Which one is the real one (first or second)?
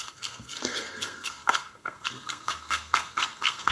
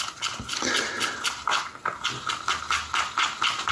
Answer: second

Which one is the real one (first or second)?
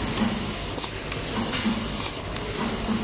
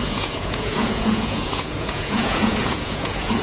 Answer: first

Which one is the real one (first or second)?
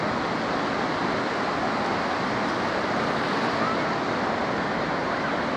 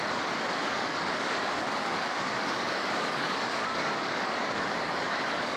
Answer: first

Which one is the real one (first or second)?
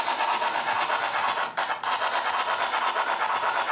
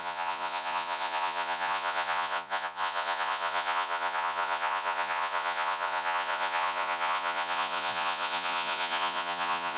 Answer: first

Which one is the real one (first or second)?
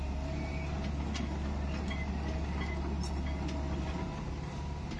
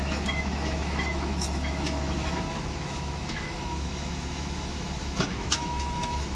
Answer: first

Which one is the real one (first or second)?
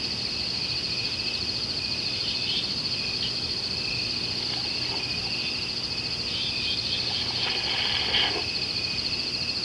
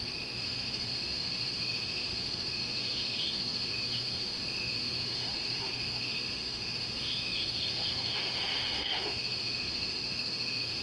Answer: first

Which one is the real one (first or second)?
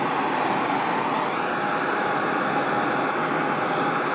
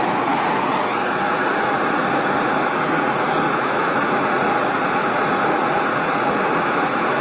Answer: first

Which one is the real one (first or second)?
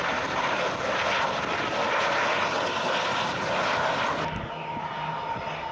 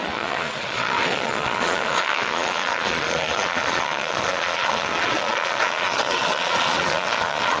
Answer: first